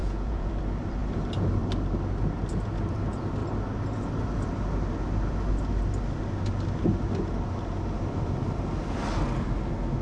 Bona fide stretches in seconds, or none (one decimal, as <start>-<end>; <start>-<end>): 0.5-10.0